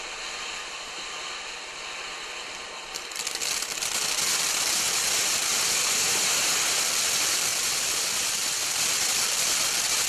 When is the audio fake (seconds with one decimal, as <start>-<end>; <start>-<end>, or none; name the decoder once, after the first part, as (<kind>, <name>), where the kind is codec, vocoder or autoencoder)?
7.5-8.8 (vocoder, BigVGAN v2)